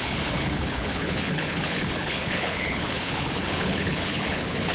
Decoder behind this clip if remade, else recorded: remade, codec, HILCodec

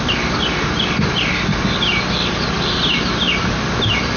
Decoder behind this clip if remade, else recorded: recorded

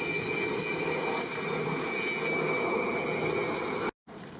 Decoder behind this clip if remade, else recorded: recorded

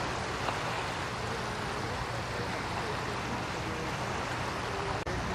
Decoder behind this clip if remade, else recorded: recorded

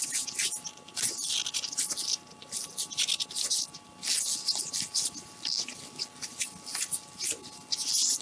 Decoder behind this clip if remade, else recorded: recorded